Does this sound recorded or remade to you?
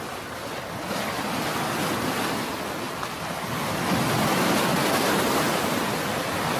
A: recorded